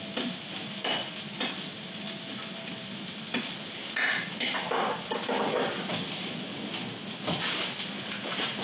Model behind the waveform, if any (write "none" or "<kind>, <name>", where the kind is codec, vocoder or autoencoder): none